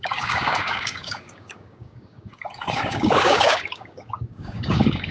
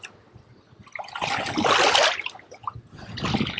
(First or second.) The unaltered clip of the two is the second